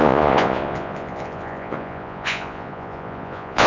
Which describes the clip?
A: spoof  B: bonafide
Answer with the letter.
A